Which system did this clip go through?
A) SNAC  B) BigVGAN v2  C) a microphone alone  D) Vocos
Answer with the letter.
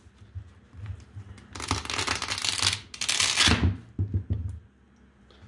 C